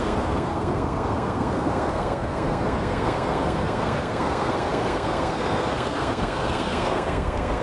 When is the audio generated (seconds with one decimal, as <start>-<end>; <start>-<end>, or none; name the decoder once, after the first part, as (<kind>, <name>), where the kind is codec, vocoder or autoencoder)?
0.0-7.6 (codec, SNAC)